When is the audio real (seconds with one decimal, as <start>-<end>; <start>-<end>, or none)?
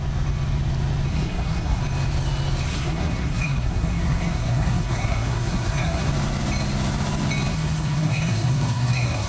0.0-1.1; 1.8-2.7; 6.1-7.5